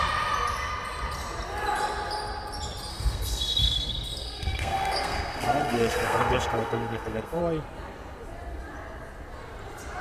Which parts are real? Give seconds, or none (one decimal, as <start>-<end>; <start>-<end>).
0.0-2.9; 7.4-10.0